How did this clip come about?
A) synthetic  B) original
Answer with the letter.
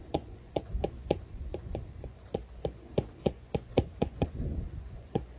A